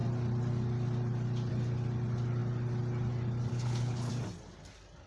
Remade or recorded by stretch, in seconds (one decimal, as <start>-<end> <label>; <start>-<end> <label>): 0.0-3.5 recorded; 3.5-4.1 remade; 4.1-5.1 recorded